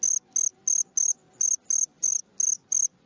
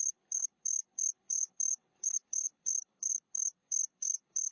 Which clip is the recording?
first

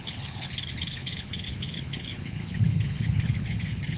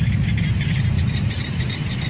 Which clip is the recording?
second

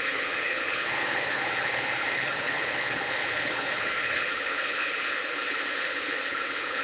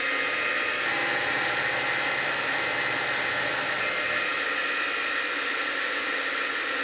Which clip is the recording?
second